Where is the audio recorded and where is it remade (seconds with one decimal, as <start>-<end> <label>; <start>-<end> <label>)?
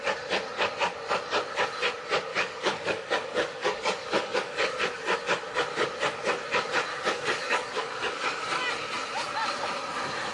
0.0-2.3 recorded; 2.3-4.7 remade; 4.7-6.9 recorded; 6.9-8.7 remade; 8.7-10.3 recorded